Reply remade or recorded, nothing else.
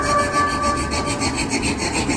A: recorded